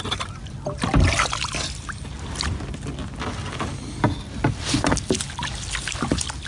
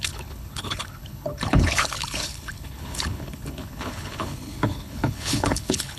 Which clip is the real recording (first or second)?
first